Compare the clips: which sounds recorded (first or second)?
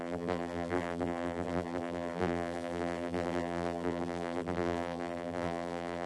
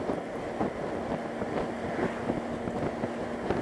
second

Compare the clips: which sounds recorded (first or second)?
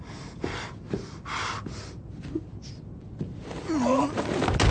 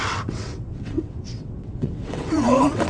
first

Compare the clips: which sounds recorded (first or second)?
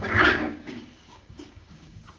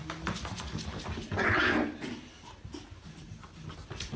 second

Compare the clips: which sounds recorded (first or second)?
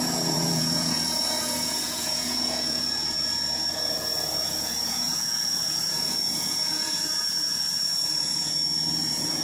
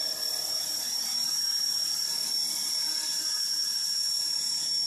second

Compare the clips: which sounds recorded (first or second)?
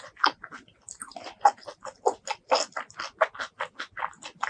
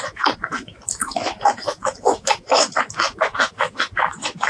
first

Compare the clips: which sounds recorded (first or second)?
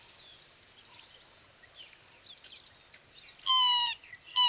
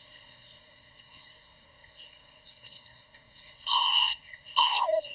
first